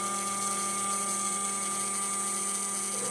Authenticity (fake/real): real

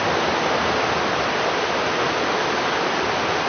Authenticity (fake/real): real